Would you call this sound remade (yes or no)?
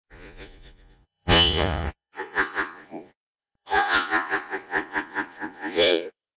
yes